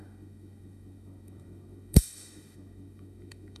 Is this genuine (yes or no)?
no